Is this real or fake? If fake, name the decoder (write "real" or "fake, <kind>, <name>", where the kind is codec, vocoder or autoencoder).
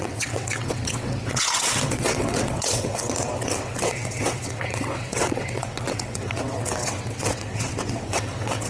fake, vocoder, WaveNeXt